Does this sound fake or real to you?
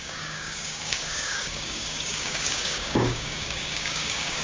fake